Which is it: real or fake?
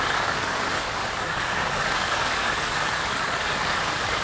fake